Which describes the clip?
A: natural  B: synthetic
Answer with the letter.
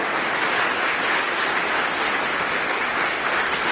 A